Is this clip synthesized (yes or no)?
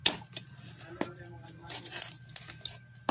no